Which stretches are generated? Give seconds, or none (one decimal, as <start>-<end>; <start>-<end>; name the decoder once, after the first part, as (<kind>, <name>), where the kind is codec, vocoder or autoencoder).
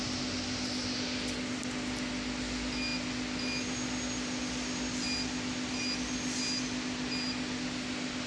none